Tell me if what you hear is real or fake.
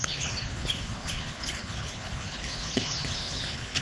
fake